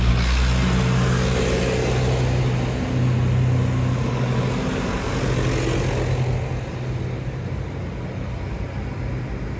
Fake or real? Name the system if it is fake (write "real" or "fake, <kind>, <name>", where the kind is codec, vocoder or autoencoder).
real